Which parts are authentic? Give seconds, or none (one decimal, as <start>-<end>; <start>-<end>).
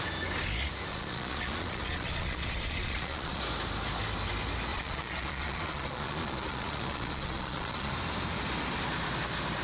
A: 0.0-0.9; 3.4-4.7; 7.9-9.6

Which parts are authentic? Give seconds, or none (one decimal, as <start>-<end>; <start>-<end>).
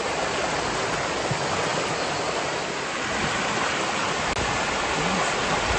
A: 0.0-5.8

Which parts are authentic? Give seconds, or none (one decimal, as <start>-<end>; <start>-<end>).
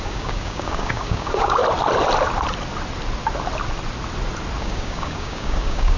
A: 1.6-4.6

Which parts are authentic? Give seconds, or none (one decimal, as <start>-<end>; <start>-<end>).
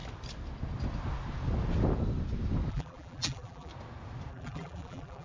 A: 0.0-2.7; 3.7-4.3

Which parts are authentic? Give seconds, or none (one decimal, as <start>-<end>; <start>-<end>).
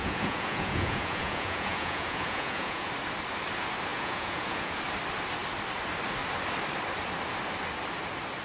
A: 2.9-3.9; 4.8-8.4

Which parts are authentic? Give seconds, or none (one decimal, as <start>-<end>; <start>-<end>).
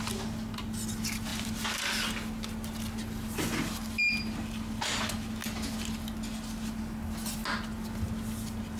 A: 0.0-8.8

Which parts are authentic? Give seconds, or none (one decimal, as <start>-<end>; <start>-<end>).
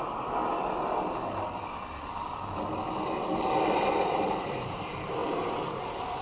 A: 0.4-4.1